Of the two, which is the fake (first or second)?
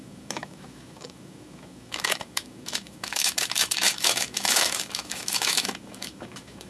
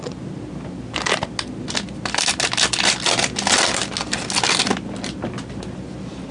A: first